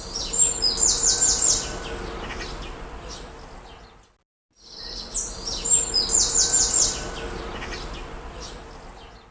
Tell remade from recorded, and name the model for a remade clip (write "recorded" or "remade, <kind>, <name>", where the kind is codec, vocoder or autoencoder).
recorded